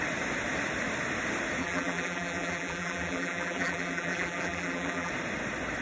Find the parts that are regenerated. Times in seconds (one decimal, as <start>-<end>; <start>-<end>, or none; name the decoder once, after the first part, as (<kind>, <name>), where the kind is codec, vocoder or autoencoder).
1.6-5.1 (vocoder, BigVGAN v2)